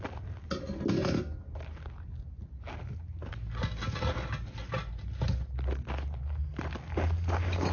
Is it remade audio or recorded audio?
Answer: recorded